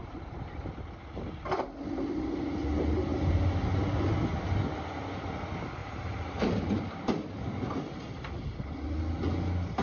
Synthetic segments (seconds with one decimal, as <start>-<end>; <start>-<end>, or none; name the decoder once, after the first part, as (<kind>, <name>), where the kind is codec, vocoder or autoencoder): 0.0-0.6 (vocoder, BigVGAN v2); 5.8-8.6